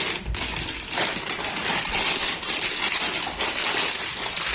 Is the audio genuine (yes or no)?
yes